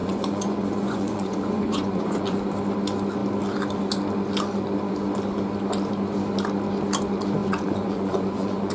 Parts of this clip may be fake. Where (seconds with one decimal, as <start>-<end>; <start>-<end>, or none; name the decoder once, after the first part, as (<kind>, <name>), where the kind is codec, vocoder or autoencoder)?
0.0-2.4 (vocoder, Vocos); 7.4-8.7